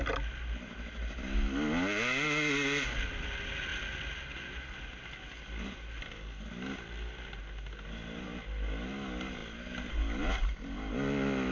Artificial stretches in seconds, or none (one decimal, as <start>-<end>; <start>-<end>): none